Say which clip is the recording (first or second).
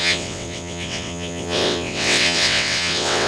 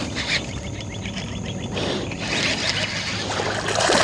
second